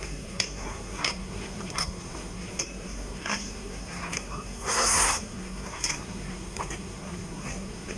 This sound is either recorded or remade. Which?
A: remade